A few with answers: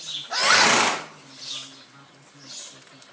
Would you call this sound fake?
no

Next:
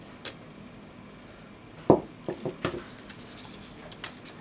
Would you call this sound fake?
no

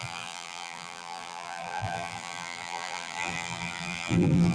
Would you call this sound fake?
yes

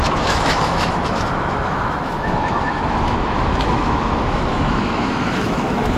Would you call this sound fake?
yes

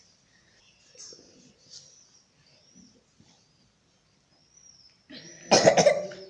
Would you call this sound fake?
no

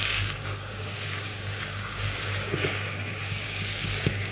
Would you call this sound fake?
yes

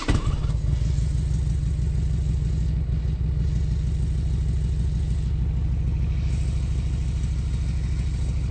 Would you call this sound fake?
no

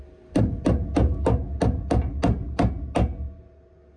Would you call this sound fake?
no